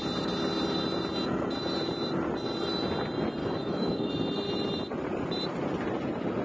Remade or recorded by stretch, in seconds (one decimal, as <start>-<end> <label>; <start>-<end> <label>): 0.0-3.4 recorded; 3.4-4.1 remade; 4.1-6.4 recorded